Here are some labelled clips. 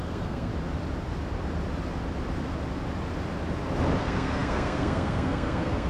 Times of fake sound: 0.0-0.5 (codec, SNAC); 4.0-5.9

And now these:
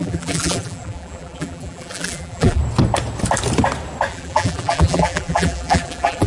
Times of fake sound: 0.0-2.6 (vocoder, BigVGAN v2); 4.1-6.3

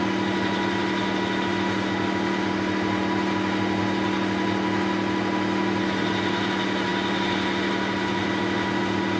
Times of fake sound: none

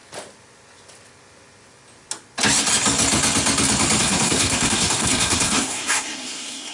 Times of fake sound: 4.0-6.7 (codec, SNAC)

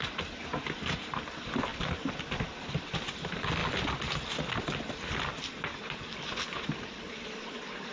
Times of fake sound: none